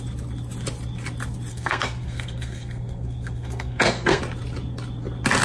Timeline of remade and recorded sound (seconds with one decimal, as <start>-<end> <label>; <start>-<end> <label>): 0.0-1.5 recorded; 1.5-4.2 remade; 4.2-5.4 recorded